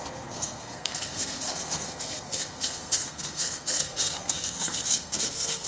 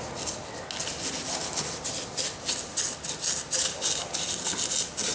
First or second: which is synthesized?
first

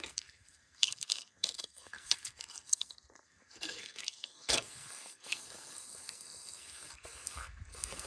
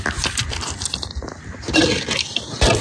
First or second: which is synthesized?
first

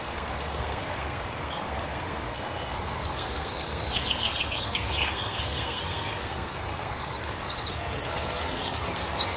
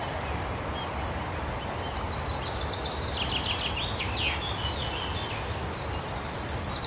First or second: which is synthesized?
first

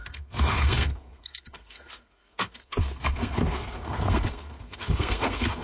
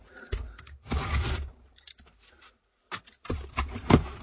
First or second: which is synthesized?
first